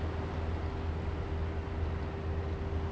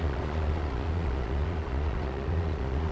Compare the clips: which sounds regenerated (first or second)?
second